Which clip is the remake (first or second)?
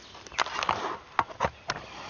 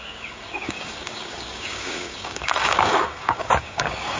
second